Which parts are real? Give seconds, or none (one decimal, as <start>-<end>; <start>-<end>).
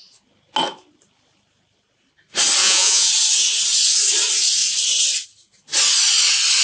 0.0-2.6; 3.1-6.6